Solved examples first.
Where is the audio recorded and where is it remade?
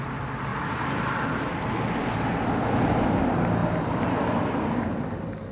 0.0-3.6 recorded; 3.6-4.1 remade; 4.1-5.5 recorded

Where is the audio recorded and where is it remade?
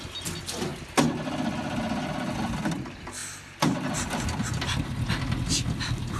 0.0-6.2 recorded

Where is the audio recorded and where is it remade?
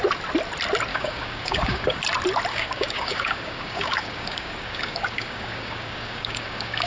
0.0-0.9 recorded; 0.9-2.0 remade; 2.0-2.5 recorded; 2.5-6.9 remade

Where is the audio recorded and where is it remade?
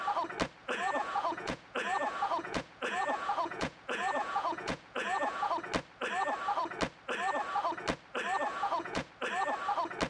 0.0-0.6 recorded; 0.6-5.5 remade; 5.5-8.5 recorded; 8.5-9.1 remade; 9.1-10.1 recorded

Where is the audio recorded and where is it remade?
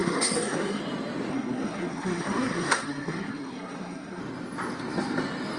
0.0-0.8 remade; 0.8-1.3 recorded; 1.3-4.2 remade; 4.2-5.6 recorded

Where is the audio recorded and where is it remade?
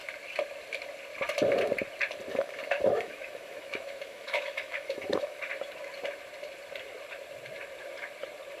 0.0-2.3 recorded; 2.3-5.4 remade; 5.4-8.6 recorded